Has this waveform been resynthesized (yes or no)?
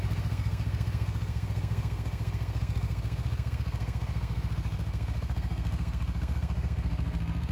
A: yes